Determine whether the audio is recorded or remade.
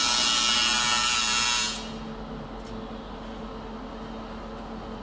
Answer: recorded